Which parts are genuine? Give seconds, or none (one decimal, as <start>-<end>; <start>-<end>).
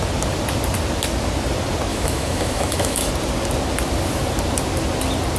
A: 0.0-1.9; 3.1-5.4